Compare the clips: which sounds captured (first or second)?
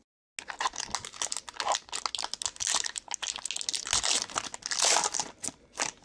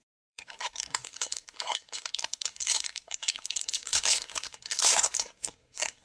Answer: first